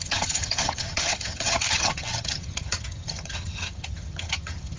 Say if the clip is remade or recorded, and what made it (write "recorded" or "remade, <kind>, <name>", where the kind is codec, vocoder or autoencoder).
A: remade, vocoder, HiFi-GAN